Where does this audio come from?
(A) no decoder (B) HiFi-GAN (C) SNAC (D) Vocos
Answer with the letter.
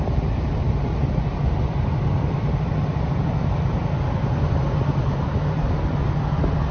A